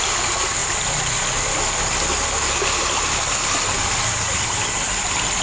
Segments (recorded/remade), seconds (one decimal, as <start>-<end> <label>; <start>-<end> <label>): 0.0-5.4 recorded